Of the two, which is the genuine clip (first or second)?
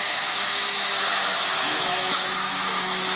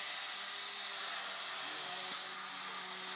second